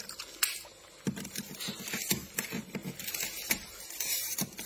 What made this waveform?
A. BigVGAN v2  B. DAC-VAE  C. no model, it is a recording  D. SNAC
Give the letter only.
C